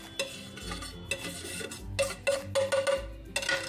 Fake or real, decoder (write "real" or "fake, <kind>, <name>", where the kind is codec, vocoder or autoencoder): real